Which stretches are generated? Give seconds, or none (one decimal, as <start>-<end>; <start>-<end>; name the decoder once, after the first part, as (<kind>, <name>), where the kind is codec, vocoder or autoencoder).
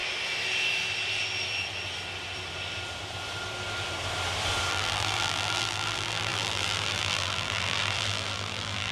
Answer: 4.7-8.9 (vocoder, BigVGAN v2)